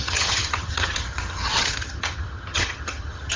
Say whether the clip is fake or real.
fake